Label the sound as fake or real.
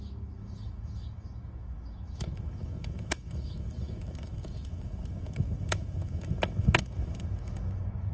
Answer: fake